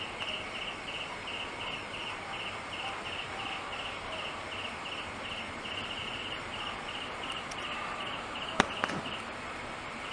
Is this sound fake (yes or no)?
no